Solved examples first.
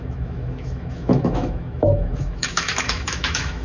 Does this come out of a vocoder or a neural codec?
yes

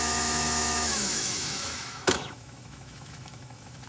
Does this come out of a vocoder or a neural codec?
yes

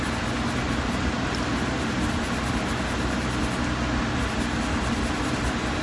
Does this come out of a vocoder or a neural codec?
no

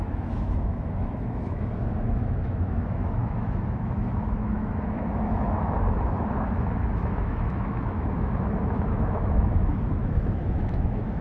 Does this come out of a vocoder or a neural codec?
yes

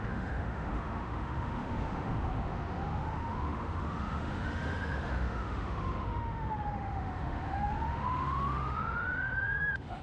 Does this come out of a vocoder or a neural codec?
yes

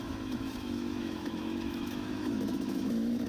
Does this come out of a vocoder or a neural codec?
yes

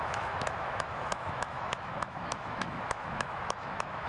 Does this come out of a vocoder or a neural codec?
yes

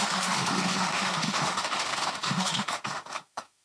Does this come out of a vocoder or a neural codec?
yes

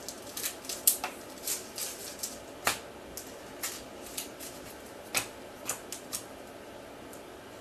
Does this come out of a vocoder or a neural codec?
no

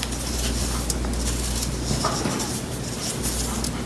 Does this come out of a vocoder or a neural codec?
no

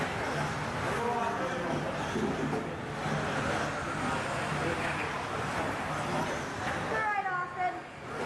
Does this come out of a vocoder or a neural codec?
no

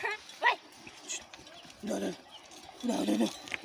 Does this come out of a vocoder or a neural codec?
no